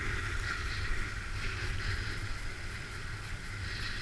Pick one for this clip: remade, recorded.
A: recorded